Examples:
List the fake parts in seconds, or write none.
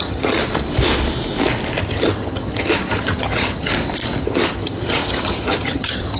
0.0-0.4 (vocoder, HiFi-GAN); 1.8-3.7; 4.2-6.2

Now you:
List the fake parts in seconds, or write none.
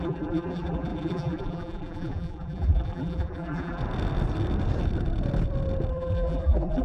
0.0-3.8 (vocoder, BigVGAN v2); 5.9-6.8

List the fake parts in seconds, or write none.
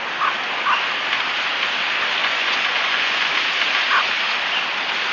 2.2-3.3 (vocoder, Vocos)